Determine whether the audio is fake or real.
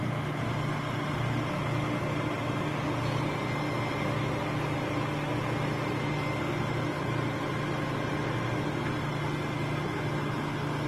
real